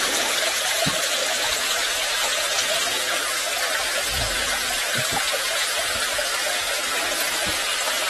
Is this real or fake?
fake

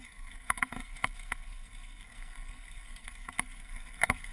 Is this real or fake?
fake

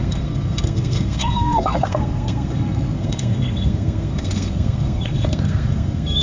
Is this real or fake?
fake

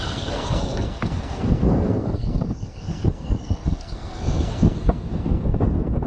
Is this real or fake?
fake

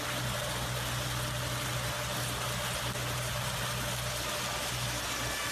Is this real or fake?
real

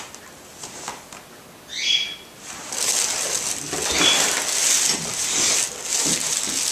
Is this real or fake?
real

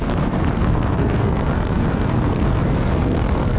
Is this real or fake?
fake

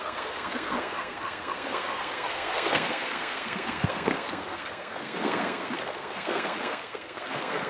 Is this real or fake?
fake